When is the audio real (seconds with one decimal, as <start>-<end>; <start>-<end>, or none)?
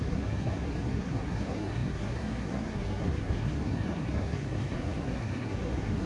none